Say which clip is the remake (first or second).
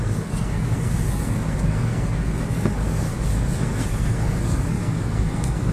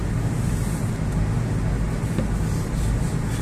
first